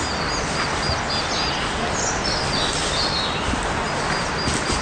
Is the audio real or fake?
real